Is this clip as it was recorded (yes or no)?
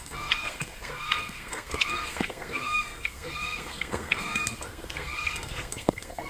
no